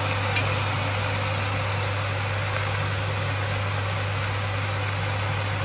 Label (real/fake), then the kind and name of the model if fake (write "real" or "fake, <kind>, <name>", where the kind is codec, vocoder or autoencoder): real